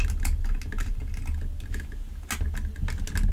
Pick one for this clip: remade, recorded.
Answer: recorded